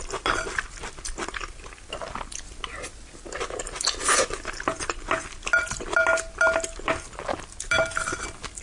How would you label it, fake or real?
real